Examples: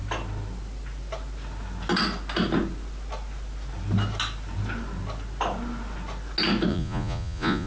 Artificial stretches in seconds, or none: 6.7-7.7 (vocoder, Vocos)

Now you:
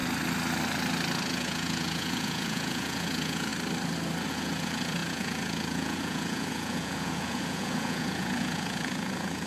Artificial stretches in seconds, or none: 1.3-3.5 (vocoder, Vocos); 4.3-9.5

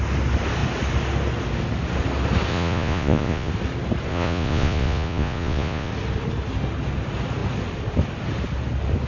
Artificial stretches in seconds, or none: 2.5-3.5 (vocoder, Vocos); 4.1-5.9

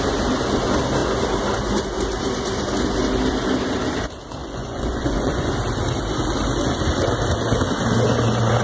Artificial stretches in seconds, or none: 4.4-5.5 (vocoder, Vocos)

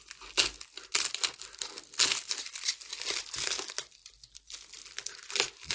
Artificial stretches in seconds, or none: none

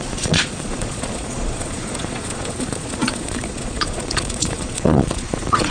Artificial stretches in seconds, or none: 0.0-5.7 (vocoder, Vocos)

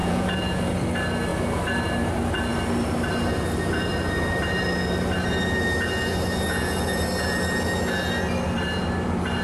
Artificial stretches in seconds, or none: 0.0-0.6 (vocoder, Vocos)